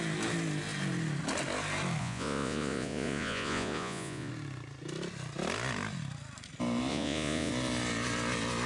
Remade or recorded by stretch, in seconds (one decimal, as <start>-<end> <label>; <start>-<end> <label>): 0.0-2.0 recorded; 2.0-4.3 remade; 4.3-6.9 recorded; 6.9-7.5 remade; 7.5-8.7 recorded